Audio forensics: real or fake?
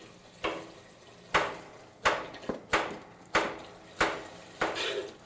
real